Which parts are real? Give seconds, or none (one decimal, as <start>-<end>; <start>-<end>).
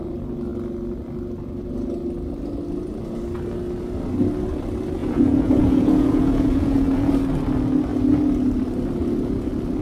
0.0-5.0; 7.1-9.8